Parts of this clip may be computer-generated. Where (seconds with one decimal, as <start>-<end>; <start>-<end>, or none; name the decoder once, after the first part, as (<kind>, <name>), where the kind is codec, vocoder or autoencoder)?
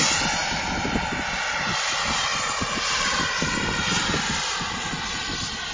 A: 2.3-4.0 (vocoder, BigVGAN v2)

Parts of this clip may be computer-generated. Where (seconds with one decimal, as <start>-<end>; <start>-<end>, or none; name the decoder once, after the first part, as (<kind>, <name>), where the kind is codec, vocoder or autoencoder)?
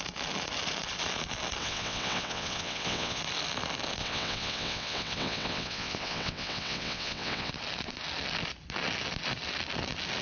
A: 1.6-3.2 (vocoder, WaveNeXt); 4.0-7.5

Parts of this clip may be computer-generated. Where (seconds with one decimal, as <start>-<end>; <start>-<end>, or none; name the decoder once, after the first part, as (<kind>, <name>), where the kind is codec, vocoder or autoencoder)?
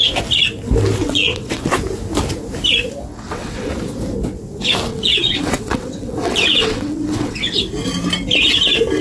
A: 1.0-1.7 (vocoder, WaveNeXt); 3.1-3.7; 4.9-7.6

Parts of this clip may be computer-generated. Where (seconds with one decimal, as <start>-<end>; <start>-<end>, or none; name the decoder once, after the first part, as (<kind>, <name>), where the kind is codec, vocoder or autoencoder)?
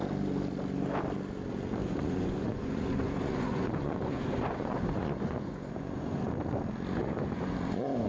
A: 1.8-6.3 (vocoder, Vocos); 7.0-8.1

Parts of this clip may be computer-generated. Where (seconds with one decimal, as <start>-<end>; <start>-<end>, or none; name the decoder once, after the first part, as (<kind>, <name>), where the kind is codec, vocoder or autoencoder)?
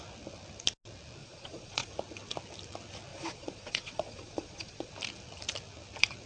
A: 1.2-1.9 (vocoder, Vocos); 3.1-4.9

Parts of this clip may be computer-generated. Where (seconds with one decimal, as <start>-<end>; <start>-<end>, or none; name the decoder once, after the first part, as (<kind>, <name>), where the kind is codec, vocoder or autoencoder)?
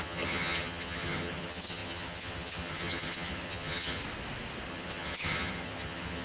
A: 0.0-4.0 (vocoder, HiFi-GAN); 4.7-6.2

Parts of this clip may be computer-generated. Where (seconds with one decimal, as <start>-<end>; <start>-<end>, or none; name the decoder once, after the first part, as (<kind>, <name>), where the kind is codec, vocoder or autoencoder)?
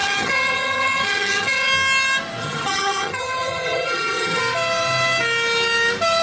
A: 0.0-1.7 (vocoder, HiFi-GAN); 2.4-4.4